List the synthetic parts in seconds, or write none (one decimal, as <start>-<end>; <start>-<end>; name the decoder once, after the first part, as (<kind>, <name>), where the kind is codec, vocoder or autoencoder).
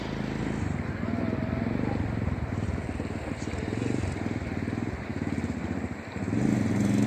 none